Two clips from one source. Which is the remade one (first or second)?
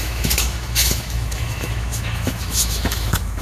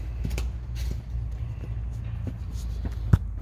first